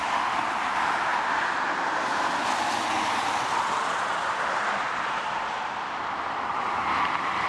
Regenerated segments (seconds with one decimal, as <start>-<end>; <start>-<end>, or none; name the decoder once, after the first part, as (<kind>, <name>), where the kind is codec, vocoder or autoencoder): none